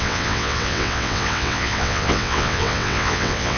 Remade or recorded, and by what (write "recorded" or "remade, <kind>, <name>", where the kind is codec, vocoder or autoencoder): remade, vocoder, WaveNeXt